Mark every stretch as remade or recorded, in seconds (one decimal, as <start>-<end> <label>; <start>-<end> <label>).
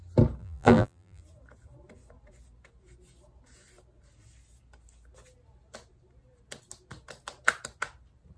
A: 0.0-0.4 recorded; 0.4-1.2 remade; 1.2-8.4 recorded